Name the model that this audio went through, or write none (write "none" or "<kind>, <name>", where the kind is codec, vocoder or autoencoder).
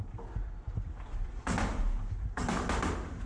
none